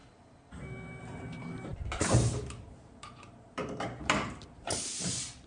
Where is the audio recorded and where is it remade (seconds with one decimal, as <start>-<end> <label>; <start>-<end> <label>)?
0.0-1.0 recorded; 1.0-5.5 remade